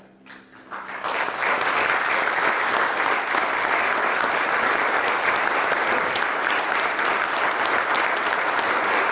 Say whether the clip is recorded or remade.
recorded